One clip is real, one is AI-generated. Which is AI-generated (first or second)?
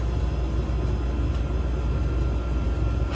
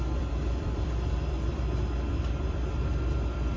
second